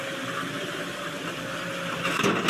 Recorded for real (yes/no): yes